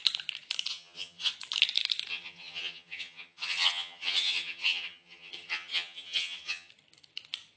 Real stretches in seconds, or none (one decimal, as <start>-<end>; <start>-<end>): 0.0-0.7; 1.3-2.1; 6.7-7.6